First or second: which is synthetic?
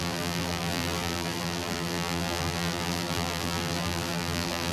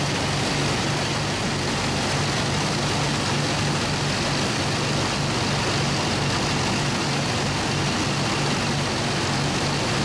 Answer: first